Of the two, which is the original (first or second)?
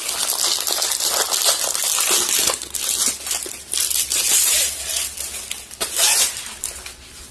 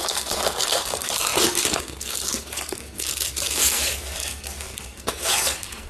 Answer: first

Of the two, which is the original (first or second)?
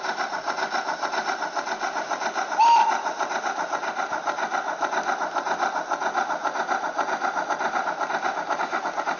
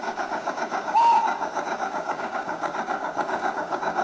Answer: first